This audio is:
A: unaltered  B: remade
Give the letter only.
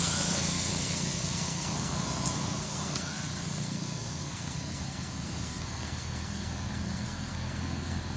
B